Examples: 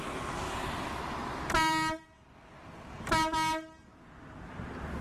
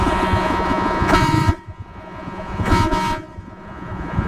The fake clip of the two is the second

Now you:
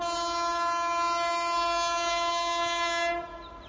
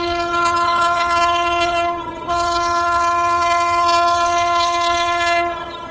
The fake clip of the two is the second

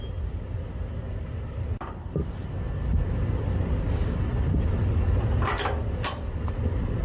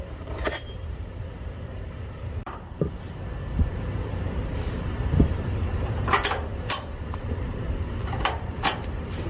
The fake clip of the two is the second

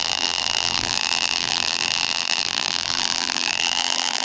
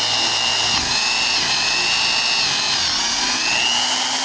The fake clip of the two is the first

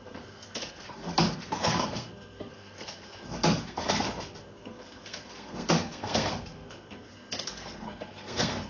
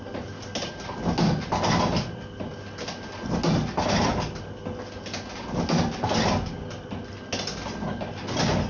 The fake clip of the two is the first